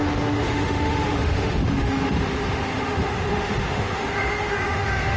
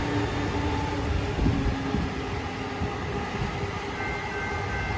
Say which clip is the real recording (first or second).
second